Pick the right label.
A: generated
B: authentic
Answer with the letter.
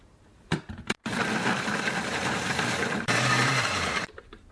A